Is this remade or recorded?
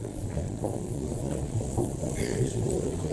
remade